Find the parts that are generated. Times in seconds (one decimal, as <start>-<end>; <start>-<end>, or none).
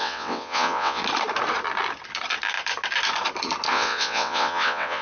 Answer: 0.0-1.0; 3.7-5.0